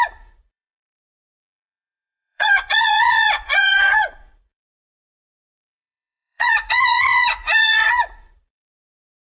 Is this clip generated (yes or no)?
yes